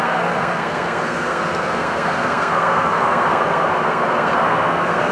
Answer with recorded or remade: remade